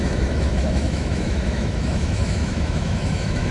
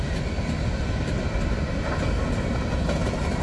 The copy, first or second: first